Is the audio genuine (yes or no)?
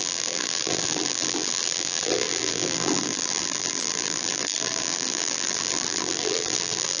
no